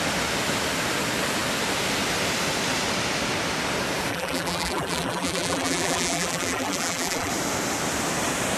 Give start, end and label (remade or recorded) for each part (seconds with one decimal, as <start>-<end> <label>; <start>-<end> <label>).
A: 0.0-4.1 recorded; 4.1-7.3 remade; 7.3-8.6 recorded